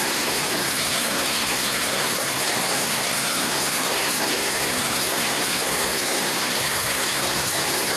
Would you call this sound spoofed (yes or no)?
yes